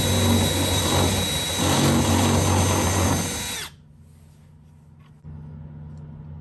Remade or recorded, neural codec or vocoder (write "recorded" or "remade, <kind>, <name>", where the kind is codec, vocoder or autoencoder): recorded